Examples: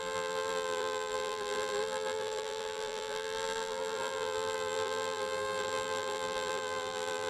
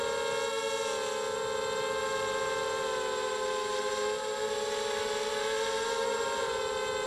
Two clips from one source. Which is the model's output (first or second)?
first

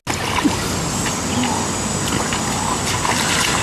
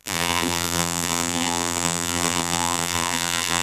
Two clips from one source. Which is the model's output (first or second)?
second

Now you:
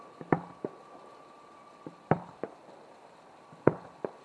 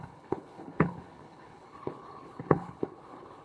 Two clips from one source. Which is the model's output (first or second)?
second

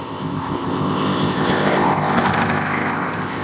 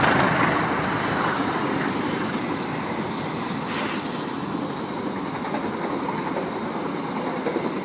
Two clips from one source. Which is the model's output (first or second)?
first